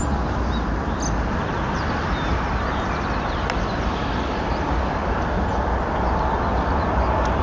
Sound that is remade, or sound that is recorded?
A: recorded